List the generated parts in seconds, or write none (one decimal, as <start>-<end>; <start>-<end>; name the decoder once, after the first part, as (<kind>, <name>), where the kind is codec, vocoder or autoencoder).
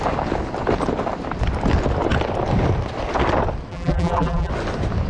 3.7-4.5 (vocoder, BigVGAN v2)